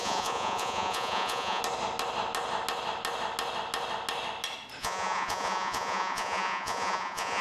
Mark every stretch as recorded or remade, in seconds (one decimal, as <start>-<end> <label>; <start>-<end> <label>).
0.0-1.6 remade; 1.6-4.8 recorded; 4.8-7.4 remade

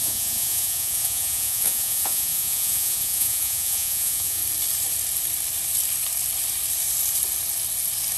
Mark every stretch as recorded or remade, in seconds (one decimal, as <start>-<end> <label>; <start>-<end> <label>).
0.0-4.4 remade; 4.4-8.2 recorded

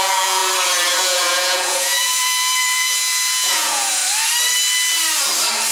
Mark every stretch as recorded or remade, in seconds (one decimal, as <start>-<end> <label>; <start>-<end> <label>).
0.0-0.4 remade; 0.4-1.0 recorded; 1.0-4.0 remade; 4.0-5.7 recorded

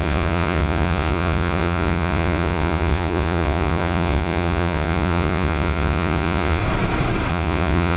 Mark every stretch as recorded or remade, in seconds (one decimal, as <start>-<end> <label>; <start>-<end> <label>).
0.0-6.6 remade; 6.6-7.3 recorded; 7.3-8.0 remade

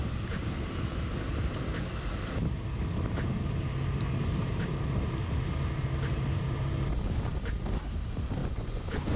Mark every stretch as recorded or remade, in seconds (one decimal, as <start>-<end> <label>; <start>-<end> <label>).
0.0-8.4 recorded; 8.4-9.2 remade

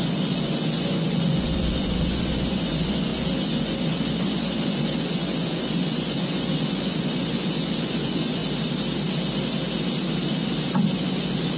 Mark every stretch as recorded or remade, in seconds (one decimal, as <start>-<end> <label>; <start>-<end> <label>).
0.0-8.4 remade; 8.4-10.7 recorded; 10.7-11.6 remade